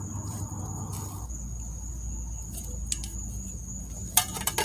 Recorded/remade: recorded